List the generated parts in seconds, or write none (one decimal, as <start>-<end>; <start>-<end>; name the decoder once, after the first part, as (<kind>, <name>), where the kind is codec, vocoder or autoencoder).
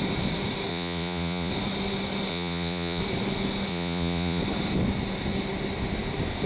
0.7-1.5 (vocoder, Vocos); 2.3-3.0; 3.7-4.4